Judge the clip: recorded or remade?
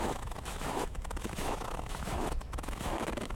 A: remade